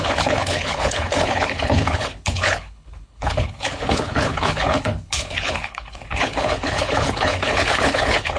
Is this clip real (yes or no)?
no